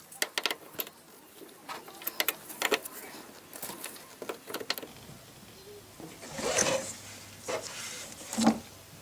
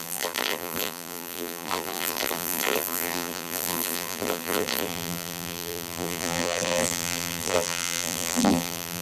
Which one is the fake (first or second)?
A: second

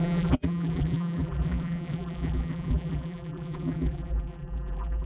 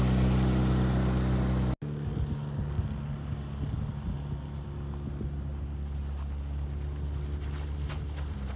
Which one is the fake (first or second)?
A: first